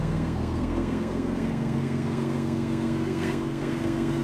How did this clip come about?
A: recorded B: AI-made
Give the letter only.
B